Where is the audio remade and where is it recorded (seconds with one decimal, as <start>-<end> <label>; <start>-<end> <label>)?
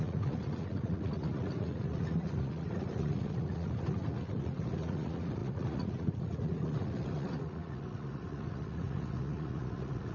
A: 0.0-10.1 remade